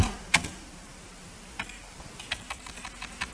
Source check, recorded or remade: recorded